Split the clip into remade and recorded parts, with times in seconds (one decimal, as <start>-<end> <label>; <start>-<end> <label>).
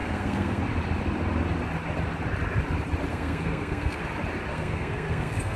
0.0-0.6 remade; 0.6-3.1 recorded; 3.1-4.0 remade; 4.0-4.5 recorded; 4.5-5.6 remade